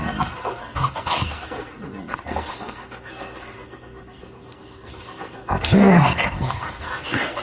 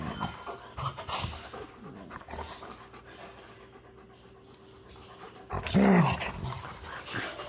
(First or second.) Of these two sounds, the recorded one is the second